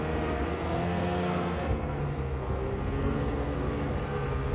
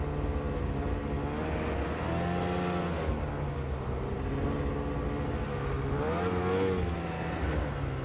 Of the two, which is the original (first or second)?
second